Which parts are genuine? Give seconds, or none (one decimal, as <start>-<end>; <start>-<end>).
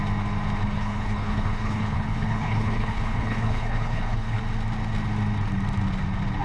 0.0-0.6; 4.4-6.4